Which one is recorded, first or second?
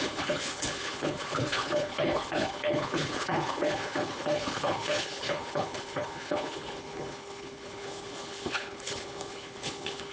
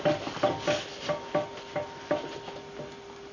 second